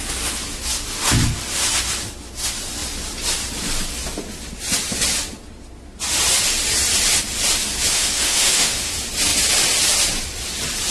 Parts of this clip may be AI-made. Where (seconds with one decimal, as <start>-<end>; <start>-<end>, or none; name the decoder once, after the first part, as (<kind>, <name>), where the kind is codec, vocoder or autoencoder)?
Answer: 7.9-8.9 (autoencoder, DAC-VAE)